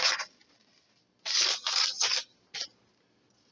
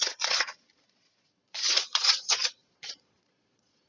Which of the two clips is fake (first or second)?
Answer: second